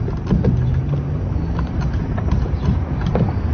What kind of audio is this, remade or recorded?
remade